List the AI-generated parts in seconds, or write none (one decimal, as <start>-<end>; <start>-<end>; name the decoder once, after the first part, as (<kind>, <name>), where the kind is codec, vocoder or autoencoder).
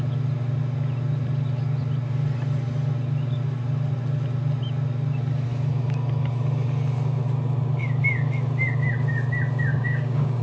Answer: 9.7-10.4 (codec, DAC)